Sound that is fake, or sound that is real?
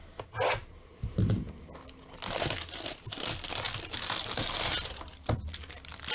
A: real